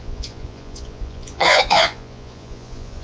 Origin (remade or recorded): remade